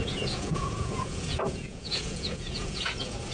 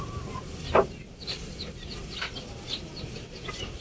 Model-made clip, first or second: first